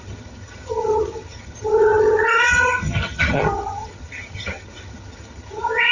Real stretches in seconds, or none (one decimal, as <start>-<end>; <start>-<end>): none